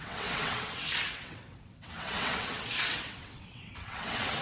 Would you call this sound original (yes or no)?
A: no